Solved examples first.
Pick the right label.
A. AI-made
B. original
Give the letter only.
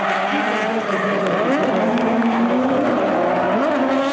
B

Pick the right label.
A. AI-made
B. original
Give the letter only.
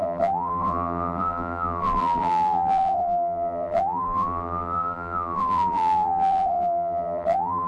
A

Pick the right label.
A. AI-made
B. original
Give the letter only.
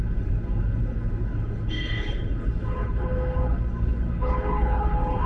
A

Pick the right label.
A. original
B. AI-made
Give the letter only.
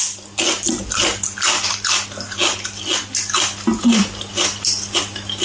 A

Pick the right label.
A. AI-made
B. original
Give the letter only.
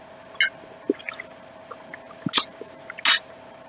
B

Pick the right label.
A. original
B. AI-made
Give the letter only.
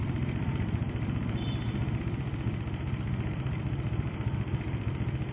A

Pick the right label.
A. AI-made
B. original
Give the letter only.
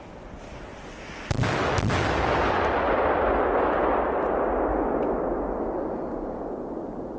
B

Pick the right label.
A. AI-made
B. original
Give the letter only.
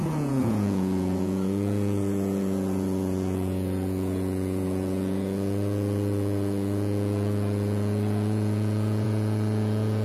A